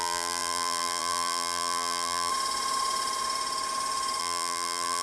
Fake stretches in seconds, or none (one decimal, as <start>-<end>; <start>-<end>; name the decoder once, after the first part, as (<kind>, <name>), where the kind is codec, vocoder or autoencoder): 0.0-2.3 (vocoder, BigVGAN v2); 4.2-5.0